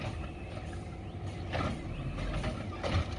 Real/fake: real